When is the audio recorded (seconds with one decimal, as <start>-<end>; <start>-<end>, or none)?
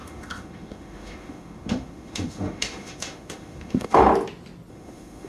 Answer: 4.0-4.7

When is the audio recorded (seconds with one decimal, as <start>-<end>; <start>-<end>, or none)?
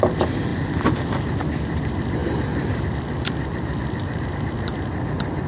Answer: 0.0-5.5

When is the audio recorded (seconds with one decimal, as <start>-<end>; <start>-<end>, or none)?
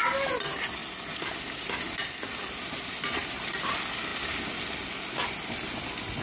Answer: 0.0-6.2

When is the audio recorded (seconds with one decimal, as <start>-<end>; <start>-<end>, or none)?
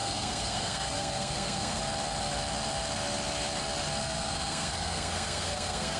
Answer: 1.8-4.0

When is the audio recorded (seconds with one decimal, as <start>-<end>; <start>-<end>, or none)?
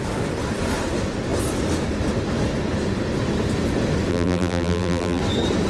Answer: 0.0-4.1; 5.2-5.7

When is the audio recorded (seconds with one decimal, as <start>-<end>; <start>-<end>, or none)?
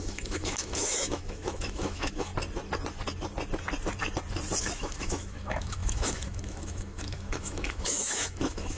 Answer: 2.3-4.6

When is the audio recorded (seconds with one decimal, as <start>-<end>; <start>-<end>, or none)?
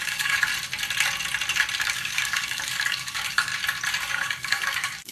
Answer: 0.5-1.8; 3.5-4.1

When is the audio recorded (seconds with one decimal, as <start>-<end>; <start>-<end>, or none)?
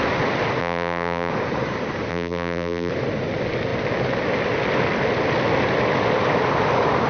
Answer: 0.0-0.6; 1.3-2.1; 2.9-7.1